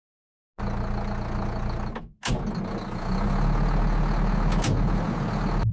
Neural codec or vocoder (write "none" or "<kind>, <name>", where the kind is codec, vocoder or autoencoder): none